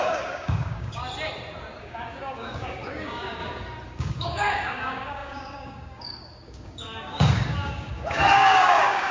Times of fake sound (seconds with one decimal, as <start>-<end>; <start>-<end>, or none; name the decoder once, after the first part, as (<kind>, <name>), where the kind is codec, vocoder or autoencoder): 0.0-1.0 (codec, DAC); 1.8-3.4; 4.0-9.1

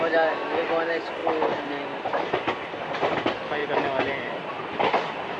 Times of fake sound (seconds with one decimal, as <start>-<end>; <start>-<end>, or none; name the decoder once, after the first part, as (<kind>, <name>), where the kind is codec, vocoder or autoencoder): 0.0-1.2 (vocoder, BigVGAN v2); 2.2-3.6; 4.2-5.4

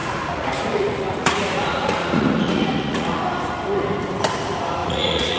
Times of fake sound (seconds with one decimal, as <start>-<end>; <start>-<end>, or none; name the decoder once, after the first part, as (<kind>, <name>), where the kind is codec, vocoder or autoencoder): 0.0-3.2 (vocoder, Vocos); 4.8-5.4

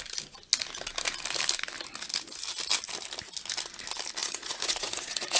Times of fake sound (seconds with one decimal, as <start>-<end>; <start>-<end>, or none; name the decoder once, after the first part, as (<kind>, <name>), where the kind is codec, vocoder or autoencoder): 4.2-5.4 (vocoder, Vocos)